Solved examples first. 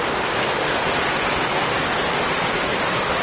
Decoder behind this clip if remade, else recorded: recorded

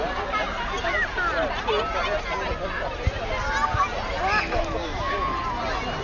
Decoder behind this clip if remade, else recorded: recorded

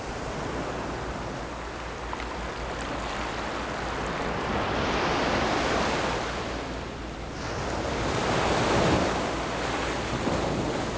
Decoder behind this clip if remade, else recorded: recorded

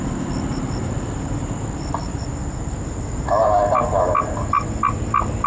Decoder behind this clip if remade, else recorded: recorded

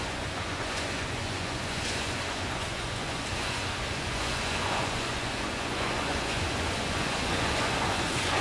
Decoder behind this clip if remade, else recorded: remade, vocoder, Vocos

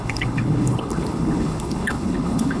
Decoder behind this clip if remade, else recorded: remade, codec, HILCodec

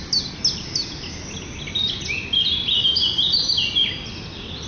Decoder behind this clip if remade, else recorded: recorded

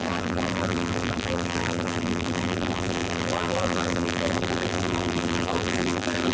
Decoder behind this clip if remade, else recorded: remade, vocoder, BigVGAN v2